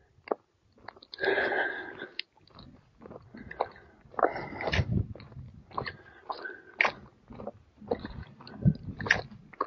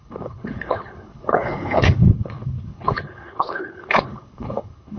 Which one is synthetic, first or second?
second